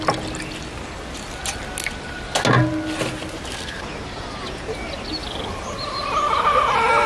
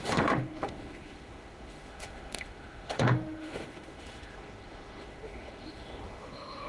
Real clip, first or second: first